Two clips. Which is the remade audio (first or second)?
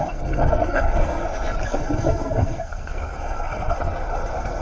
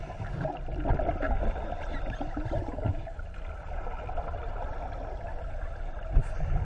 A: first